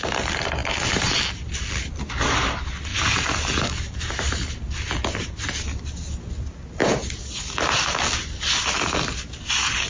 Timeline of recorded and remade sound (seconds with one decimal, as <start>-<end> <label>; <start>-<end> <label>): 0.0-0.6 recorded; 0.6-1.2 remade; 1.2-2.9 recorded; 2.9-4.5 remade; 4.5-9.9 recorded